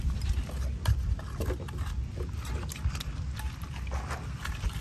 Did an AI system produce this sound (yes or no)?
no